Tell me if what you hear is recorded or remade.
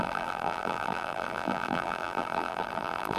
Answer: remade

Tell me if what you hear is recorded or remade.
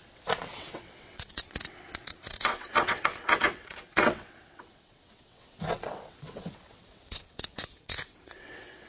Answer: remade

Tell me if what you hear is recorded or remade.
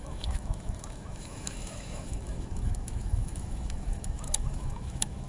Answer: remade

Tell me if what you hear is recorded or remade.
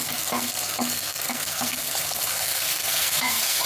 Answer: remade